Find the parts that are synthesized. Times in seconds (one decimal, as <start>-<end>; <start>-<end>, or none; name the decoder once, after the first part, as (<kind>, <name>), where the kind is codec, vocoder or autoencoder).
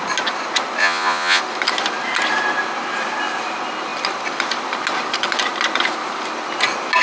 0.8-1.4 (vocoder, Vocos)